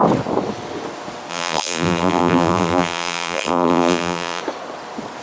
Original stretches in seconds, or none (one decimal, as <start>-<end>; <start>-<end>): 0.0-1.3; 4.4-5.2